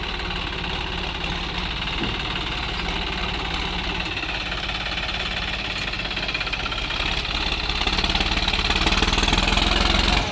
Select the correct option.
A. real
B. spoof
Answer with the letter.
A